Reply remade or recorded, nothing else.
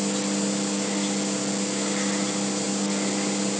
recorded